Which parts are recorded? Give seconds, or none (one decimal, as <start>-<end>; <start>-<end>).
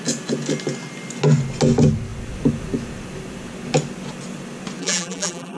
0.0-4.8